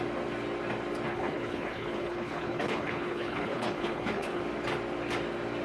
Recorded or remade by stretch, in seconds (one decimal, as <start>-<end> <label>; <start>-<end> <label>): 0.0-1.1 recorded; 1.1-4.4 remade; 4.4-5.6 recorded

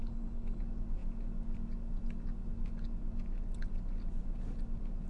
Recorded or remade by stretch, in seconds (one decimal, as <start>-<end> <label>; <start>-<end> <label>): 0.0-0.6 remade; 0.6-5.1 recorded

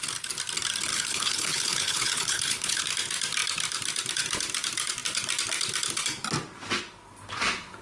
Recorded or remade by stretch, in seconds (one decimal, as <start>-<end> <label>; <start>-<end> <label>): 0.0-0.9 recorded; 0.9-2.8 remade; 2.8-7.8 recorded